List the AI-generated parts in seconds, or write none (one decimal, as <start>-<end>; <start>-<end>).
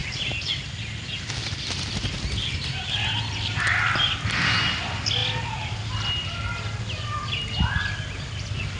none